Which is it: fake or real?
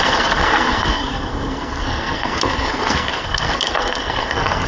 fake